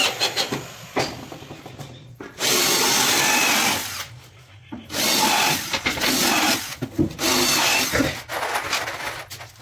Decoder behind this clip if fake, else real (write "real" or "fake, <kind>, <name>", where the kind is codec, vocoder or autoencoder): real